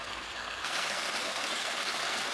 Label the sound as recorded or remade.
remade